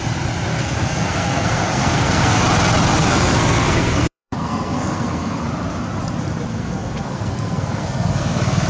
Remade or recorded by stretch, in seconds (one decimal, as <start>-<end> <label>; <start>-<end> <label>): 0.0-0.5 recorded; 0.5-2.4 remade; 2.4-3.0 recorded; 3.0-5.4 remade; 5.4-6.5 recorded; 6.5-8.7 remade